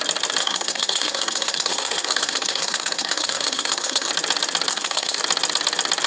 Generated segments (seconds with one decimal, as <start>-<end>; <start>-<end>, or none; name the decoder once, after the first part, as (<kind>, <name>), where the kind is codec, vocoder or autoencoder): 0.4-4.1 (codec, SNAC); 4.7-5.2